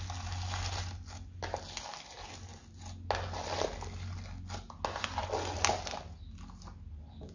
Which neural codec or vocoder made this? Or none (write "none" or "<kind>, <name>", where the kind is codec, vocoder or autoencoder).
none